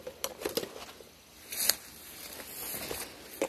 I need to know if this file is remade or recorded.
recorded